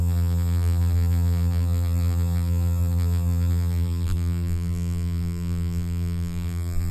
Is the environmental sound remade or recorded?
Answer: remade